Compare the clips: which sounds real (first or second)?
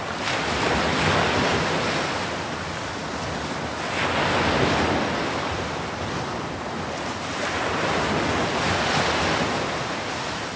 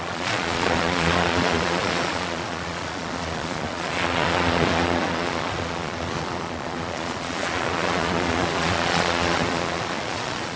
first